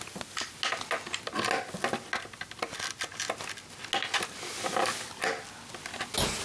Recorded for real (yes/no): yes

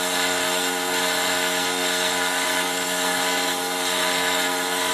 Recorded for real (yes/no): no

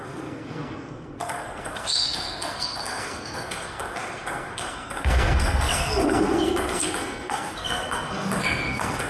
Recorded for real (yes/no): no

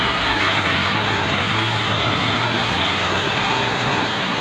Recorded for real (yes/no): no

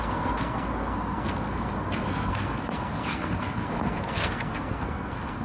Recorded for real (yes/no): no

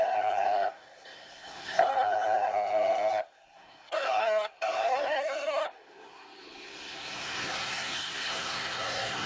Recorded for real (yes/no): no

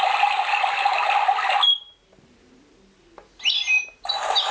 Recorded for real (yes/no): yes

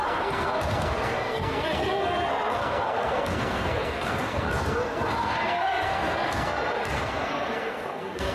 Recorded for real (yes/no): no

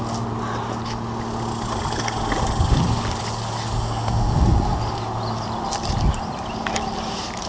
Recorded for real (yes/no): yes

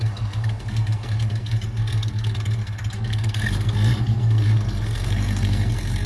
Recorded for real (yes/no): no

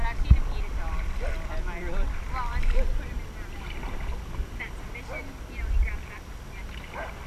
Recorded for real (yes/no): yes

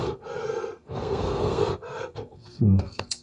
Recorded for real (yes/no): no